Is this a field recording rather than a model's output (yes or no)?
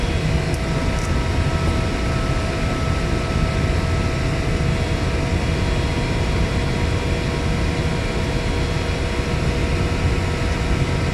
yes